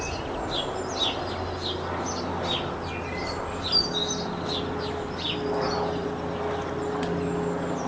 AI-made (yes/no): no